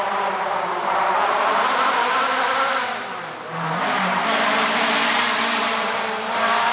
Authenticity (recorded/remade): remade